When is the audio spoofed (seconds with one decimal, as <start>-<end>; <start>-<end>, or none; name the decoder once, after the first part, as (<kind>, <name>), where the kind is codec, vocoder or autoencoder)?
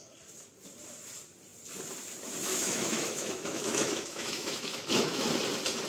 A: 2.5-5.3 (autoencoder, DAC-VAE)